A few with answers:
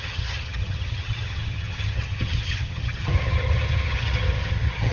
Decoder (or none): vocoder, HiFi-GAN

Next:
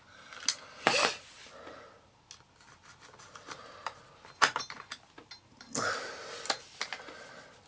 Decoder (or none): none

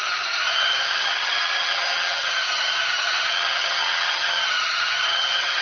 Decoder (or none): vocoder, HiFi-GAN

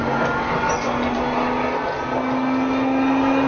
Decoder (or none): none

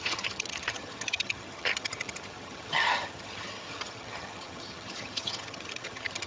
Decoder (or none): vocoder, HiFi-GAN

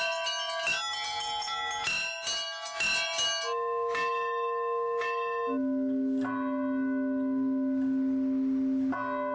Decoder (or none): none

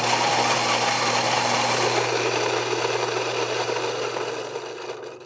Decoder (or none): none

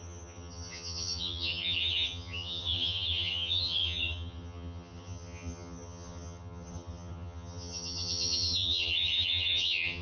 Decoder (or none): vocoder, HiFi-GAN